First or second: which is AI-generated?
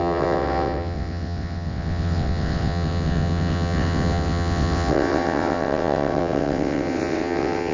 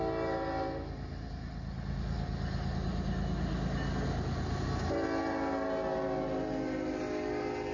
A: first